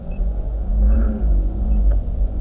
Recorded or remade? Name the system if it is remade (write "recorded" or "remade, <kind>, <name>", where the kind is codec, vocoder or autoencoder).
remade, vocoder, Vocos